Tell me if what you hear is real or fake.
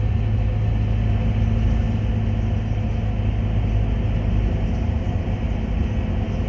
real